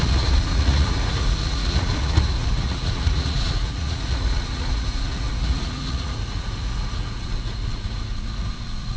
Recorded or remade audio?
remade